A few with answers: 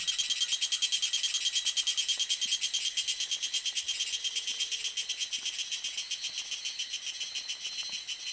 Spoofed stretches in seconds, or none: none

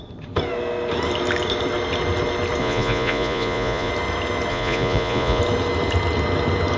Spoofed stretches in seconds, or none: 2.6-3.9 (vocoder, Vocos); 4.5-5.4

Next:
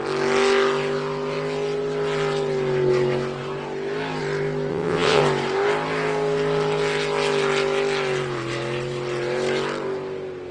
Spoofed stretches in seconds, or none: 4.7-5.2 (vocoder, WaveNeXt)

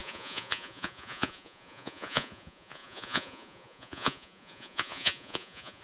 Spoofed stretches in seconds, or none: 0.0-5.8 (vocoder, Vocos)

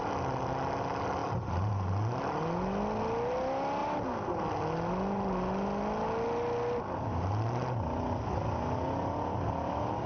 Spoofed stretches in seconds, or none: none